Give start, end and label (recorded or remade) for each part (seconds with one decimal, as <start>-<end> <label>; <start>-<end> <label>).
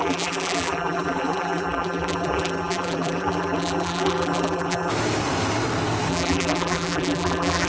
0.0-4.9 remade; 4.9-6.1 recorded; 6.1-7.7 remade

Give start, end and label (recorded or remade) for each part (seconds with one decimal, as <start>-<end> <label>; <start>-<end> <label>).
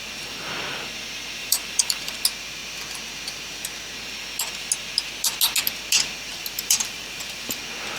0.0-1.4 recorded; 1.4-2.1 remade; 2.1-6.3 recorded; 6.3-7.6 remade; 7.6-8.0 recorded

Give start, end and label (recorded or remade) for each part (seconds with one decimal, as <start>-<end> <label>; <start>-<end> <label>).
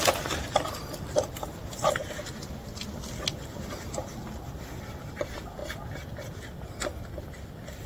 0.0-7.9 recorded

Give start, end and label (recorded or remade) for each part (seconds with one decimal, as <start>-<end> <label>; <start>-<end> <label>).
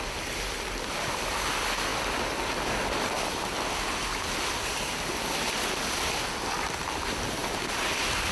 0.0-7.4 recorded; 7.4-8.3 remade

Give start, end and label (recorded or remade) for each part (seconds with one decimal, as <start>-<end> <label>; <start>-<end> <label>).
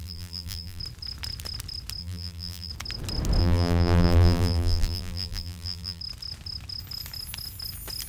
0.0-0.8 remade; 0.8-2.0 recorded; 2.0-2.7 remade; 2.7-3.4 recorded; 3.4-6.0 remade; 6.0-8.1 recorded